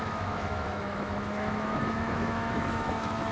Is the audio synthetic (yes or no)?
yes